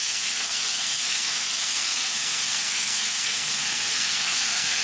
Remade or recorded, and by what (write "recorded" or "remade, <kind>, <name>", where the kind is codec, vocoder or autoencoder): remade, codec, SNAC